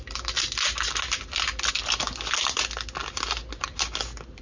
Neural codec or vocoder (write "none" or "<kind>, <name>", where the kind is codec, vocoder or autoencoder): none